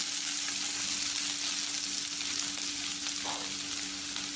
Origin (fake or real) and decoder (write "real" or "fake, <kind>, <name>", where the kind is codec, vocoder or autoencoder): real